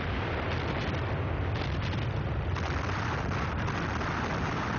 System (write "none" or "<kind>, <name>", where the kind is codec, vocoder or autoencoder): none